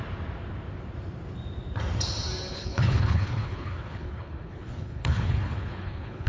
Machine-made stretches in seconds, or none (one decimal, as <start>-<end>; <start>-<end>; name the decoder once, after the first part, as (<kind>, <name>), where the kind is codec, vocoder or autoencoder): 2.5-6.3 (codec, HILCodec)